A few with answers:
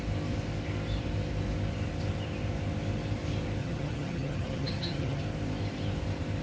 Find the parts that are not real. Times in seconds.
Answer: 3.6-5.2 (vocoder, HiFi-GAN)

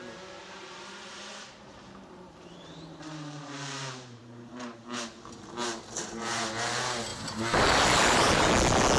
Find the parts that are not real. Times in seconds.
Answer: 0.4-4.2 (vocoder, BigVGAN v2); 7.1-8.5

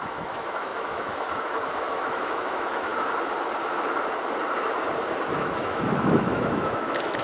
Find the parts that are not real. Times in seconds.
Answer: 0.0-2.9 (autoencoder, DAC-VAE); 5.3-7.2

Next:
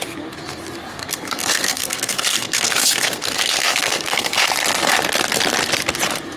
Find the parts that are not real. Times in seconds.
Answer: 0.9-4.4 (codec, SNAC)

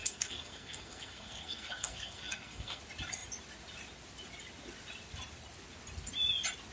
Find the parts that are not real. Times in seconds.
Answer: 0.0-2.8 (codec, SNAC)

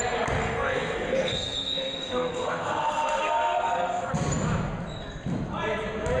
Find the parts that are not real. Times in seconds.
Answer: 0.4-4.1 (codec, SNAC)